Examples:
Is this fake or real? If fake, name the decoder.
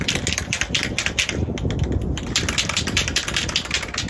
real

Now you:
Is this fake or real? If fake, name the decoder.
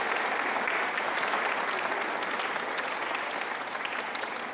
real